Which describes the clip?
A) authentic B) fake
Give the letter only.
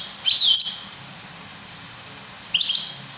A